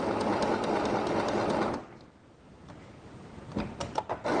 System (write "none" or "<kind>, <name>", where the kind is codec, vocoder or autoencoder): none